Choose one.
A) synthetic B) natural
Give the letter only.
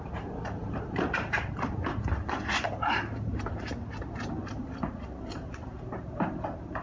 A